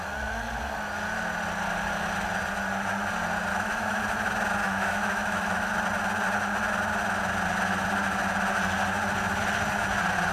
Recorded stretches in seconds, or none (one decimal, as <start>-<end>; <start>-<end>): 0.0-3.5; 4.0-4.6; 5.7-10.3